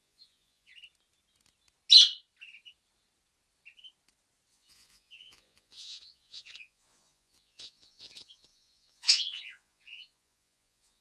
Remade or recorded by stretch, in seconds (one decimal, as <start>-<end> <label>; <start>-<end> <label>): 0.0-0.7 remade; 0.7-4.5 recorded; 4.5-11.0 remade